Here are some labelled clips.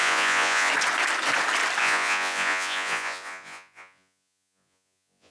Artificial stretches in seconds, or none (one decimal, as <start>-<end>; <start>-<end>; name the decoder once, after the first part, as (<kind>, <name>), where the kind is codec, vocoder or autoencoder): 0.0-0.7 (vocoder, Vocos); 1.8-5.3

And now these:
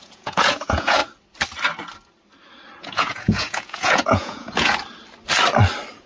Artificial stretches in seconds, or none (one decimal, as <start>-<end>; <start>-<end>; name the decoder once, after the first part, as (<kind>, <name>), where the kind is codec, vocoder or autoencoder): 0.0-1.0 (vocoder, Vocos); 2.8-4.7

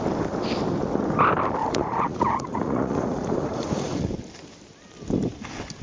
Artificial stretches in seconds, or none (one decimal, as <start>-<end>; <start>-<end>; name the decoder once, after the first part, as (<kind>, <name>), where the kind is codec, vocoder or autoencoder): 1.6-4.0 (vocoder, Vocos)